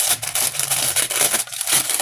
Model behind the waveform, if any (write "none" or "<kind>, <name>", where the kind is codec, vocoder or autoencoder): none